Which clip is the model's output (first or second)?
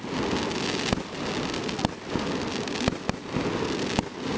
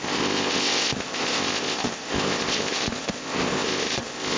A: second